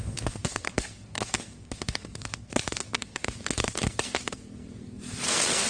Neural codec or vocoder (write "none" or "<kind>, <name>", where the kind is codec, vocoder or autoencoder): codec, SNAC